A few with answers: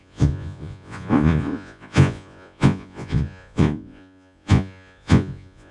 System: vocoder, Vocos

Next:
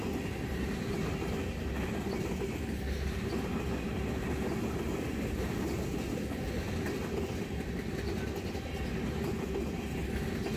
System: none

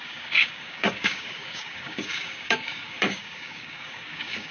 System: codec, DAC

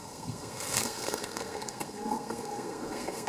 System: codec, SNAC